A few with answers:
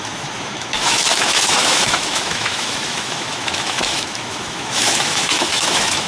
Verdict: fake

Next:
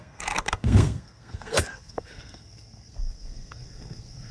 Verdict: fake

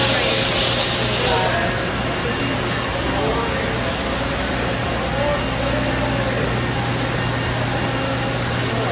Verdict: real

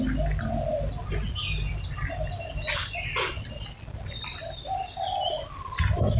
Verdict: real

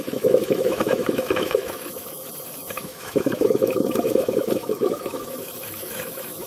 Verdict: fake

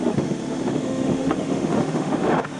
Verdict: fake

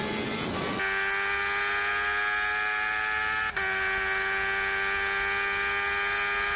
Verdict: real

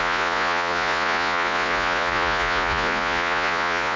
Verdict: fake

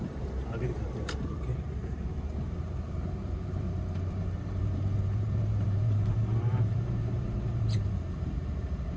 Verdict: fake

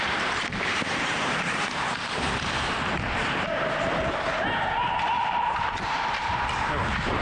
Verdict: fake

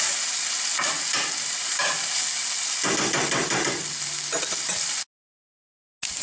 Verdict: real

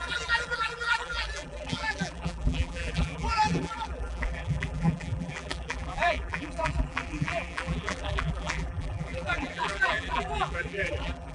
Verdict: fake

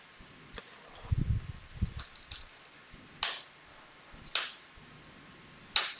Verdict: real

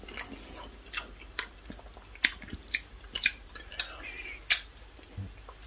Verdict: real